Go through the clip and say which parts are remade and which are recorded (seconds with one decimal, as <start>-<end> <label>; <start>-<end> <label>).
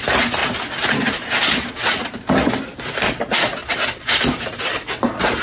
0.0-0.4 recorded; 0.4-2.5 remade; 2.5-3.6 recorded; 3.6-4.6 remade; 4.6-5.4 recorded